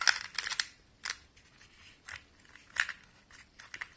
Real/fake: real